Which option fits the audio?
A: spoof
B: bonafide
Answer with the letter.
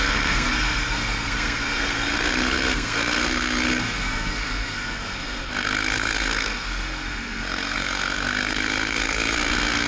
A